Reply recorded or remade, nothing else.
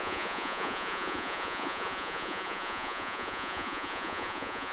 remade